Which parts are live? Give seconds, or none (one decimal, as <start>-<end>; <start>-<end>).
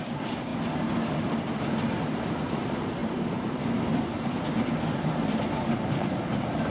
0.5-1.1